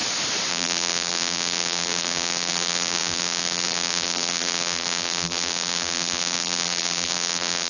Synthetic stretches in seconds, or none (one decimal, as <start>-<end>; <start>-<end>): 0.5-7.7